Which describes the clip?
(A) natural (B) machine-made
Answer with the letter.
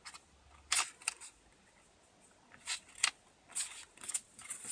A